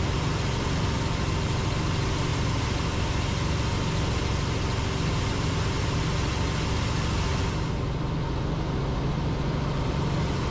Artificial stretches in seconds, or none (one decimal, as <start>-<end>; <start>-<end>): none

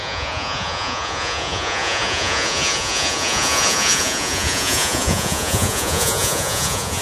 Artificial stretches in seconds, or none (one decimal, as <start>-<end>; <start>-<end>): 0.0-7.0

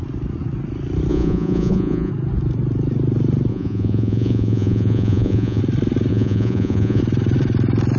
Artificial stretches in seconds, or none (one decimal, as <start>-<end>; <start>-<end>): 1.1-2.1; 3.5-5.6; 6.1-7.0

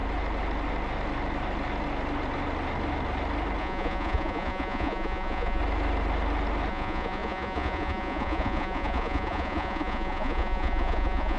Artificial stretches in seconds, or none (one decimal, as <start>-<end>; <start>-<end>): 3.6-5.6; 6.7-11.4